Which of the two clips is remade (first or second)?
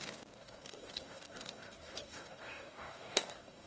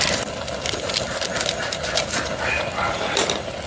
first